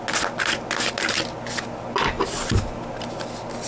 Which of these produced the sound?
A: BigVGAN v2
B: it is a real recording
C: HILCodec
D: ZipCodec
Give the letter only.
B